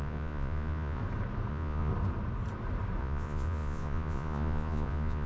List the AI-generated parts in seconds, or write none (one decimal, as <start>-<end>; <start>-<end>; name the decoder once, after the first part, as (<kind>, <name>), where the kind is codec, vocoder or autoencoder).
0.0-1.0 (vocoder, Vocos); 1.5-1.9; 3.0-5.3